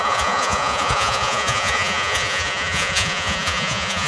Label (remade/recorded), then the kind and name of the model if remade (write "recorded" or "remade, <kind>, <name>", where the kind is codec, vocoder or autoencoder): remade, vocoder, Vocos